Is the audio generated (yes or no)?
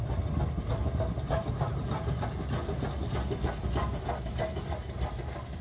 no